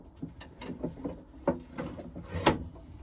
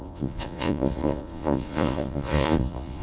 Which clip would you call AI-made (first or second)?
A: second